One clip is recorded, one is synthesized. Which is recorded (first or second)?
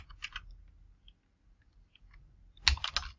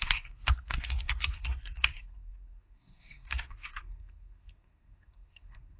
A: first